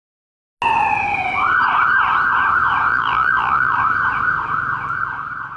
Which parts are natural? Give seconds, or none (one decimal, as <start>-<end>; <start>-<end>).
0.0-2.9; 3.8-5.6